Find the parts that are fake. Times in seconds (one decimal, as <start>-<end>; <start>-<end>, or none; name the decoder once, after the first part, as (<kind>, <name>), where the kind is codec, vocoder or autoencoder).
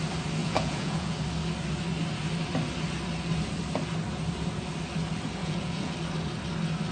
0.4-1.2 (vocoder, Vocos); 5.4-5.9